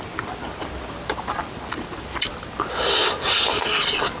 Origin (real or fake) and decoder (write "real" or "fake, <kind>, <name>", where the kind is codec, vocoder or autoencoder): real